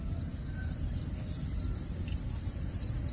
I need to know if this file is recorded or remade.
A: recorded